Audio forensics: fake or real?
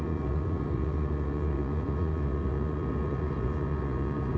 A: fake